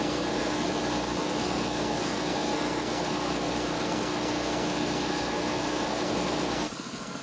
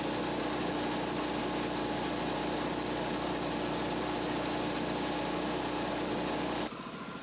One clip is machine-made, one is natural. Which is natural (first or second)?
second